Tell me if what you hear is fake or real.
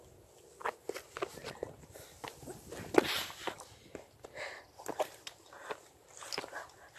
real